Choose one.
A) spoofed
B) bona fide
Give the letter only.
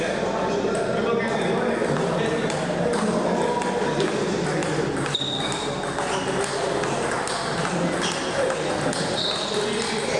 B